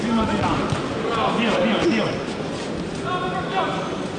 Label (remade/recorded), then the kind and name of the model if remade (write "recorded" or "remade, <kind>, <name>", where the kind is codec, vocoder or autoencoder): recorded